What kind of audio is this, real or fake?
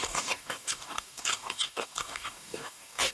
fake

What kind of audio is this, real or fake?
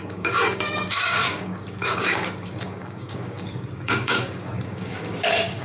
fake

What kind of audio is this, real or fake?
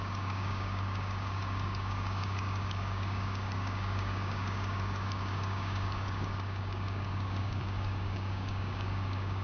fake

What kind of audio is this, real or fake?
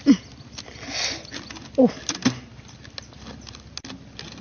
real